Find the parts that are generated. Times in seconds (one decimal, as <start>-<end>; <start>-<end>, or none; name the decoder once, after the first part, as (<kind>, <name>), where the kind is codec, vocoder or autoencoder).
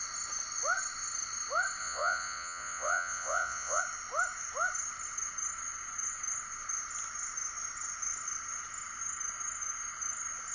1.8-3.8 (vocoder, Vocos)